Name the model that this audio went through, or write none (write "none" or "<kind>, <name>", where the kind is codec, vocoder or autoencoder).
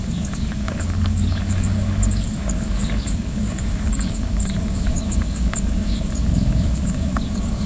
codec, DAC